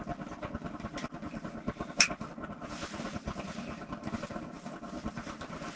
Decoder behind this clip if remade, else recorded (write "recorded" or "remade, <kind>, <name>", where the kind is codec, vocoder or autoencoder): recorded